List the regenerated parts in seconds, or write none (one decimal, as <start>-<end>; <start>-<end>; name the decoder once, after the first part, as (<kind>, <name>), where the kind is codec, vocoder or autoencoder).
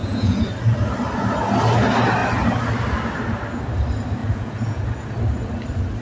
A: 0.0-0.5 (vocoder, Vocos); 4.2-4.9